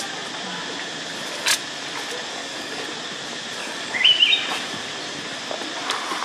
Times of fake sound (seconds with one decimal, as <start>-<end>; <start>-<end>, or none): 2.3-2.8; 3.6-4.2